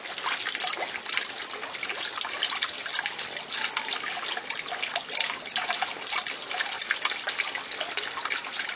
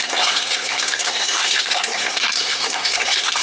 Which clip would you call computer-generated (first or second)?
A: second